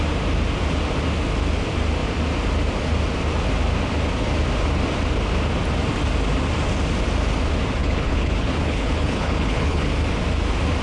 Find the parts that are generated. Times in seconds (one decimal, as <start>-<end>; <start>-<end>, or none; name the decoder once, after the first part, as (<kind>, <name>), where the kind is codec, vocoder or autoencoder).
7.8-9.9 (codec, HILCodec)